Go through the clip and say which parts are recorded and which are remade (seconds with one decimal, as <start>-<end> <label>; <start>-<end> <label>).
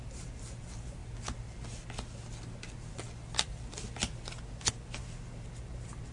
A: 0.0-1.0 remade; 1.0-4.7 recorded; 4.7-6.1 remade